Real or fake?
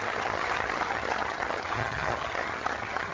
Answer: fake